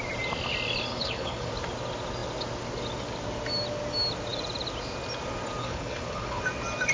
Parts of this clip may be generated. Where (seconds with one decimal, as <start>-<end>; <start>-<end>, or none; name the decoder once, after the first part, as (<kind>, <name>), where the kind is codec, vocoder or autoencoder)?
0.9-1.5 (codec, HILCodec); 5.6-6.4